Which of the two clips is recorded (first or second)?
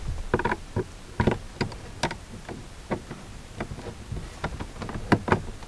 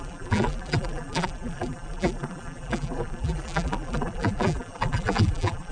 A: first